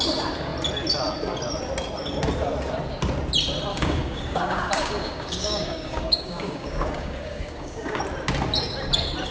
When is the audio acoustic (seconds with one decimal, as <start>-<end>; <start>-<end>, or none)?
0.0-3.7; 8.0-9.3